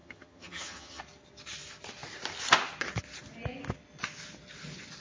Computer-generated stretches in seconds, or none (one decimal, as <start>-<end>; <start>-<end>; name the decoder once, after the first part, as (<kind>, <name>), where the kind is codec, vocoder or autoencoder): 0.0-1.0 (vocoder, HiFi-GAN)